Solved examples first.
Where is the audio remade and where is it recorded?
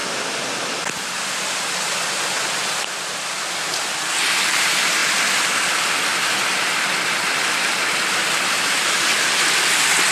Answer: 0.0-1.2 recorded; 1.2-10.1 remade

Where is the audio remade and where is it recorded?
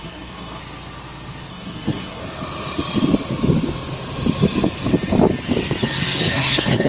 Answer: 0.0-0.6 remade; 0.6-1.5 recorded; 1.5-2.2 remade; 2.2-6.3 recorded; 6.3-6.9 remade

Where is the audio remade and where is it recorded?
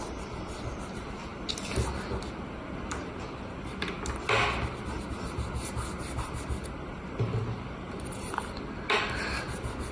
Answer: 0.0-9.9 recorded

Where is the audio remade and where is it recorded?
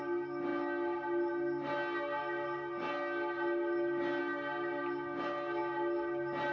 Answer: 0.0-6.5 recorded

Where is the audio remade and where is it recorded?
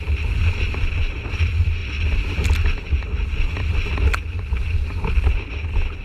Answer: 0.0-1.8 remade; 1.8-3.0 recorded; 3.0-3.7 remade; 3.7-6.0 recorded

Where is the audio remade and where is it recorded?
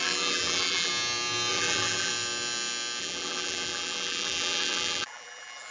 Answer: 0.0-0.9 remade; 0.9-1.5 recorded; 1.5-2.1 remade; 2.1-3.0 recorded; 3.0-5.7 remade